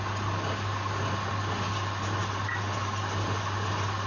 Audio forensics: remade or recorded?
recorded